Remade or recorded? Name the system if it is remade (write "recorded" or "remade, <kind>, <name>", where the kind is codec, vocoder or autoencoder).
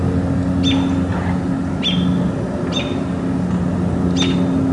recorded